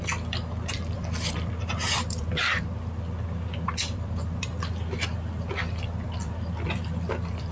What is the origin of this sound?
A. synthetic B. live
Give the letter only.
A